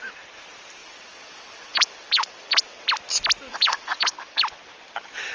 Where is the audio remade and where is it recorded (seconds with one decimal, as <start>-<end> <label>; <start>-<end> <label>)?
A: 0.0-0.8 recorded; 0.8-2.9 remade; 2.9-3.6 recorded; 3.6-4.4 remade; 4.4-5.3 recorded